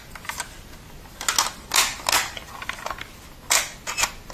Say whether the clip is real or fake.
real